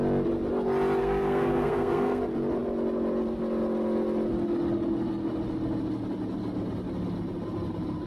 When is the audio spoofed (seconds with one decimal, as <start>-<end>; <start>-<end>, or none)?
1.0-2.2